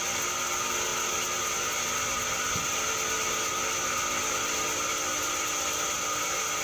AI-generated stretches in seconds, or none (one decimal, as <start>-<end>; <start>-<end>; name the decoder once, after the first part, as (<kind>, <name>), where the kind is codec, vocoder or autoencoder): none